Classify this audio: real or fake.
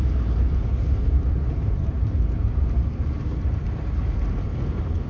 fake